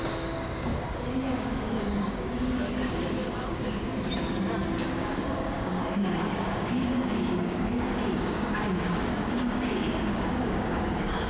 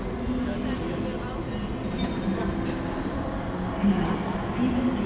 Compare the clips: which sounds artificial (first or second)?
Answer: first